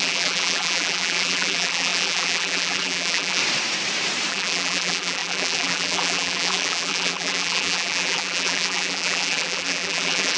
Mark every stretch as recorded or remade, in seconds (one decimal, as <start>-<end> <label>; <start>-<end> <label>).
0.0-3.4 remade; 3.4-4.3 recorded; 4.3-10.4 remade